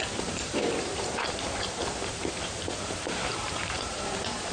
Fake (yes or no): yes